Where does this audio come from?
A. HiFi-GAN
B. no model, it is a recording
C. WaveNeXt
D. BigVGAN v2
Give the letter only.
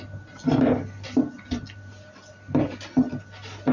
B